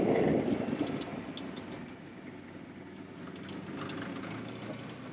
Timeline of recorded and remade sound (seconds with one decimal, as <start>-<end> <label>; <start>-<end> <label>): 0.0-5.1 recorded